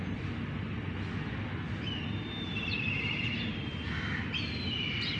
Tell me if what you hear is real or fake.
real